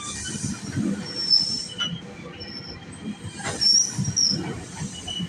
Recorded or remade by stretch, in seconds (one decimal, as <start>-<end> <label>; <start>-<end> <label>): 0.0-5.3 recorded